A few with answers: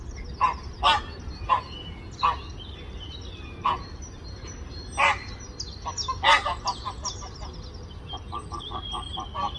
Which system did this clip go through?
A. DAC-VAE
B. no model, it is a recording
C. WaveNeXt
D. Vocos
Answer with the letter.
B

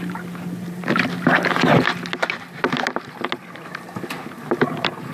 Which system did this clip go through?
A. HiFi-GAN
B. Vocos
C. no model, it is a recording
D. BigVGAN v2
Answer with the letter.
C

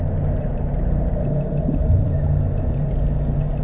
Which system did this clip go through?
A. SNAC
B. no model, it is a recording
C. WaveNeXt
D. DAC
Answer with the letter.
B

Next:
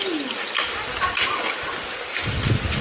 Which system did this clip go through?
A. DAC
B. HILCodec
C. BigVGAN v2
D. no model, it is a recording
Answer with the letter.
D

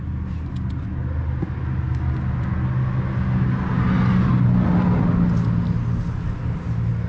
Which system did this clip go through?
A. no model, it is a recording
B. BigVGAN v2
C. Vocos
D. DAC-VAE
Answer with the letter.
A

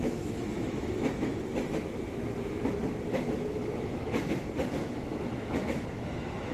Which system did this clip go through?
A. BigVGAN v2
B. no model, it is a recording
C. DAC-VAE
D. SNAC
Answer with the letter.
C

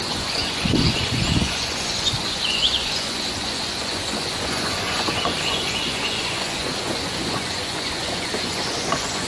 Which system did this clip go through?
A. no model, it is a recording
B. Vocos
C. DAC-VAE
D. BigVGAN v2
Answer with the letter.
B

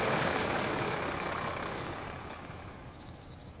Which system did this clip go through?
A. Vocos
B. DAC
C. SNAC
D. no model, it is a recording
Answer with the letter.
B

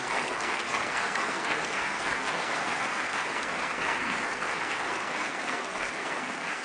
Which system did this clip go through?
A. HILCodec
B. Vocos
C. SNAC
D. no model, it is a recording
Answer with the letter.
C